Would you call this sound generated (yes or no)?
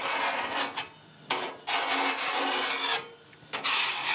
no